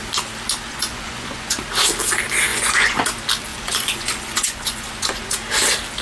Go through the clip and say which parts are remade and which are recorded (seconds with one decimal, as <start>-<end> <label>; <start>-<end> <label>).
0.0-0.7 recorded; 0.7-1.6 remade; 1.6-2.5 recorded; 2.5-3.0 remade; 3.0-3.5 recorded; 3.5-5.3 remade; 5.3-6.0 recorded